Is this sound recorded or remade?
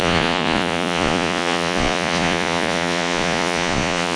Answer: remade